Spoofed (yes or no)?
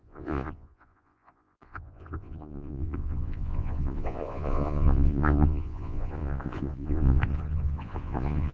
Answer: yes